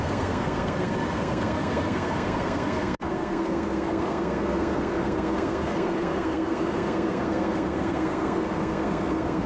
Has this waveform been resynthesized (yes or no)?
yes